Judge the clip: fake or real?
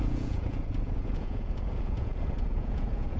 fake